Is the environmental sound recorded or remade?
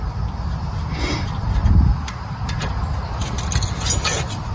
recorded